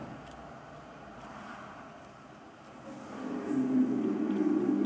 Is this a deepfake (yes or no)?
no